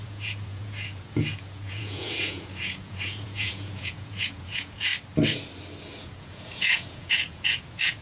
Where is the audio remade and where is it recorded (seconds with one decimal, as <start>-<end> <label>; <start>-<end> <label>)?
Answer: 0.0-4.9 remade; 4.9-6.0 recorded; 6.0-8.0 remade